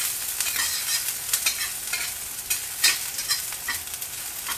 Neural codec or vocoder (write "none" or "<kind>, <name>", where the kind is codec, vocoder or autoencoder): none